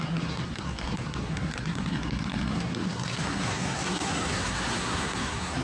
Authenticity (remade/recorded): remade